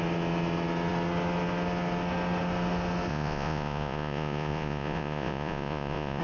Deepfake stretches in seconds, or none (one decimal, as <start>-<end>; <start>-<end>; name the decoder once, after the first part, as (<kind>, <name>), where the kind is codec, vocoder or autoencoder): 3.1-6.2 (vocoder, Vocos)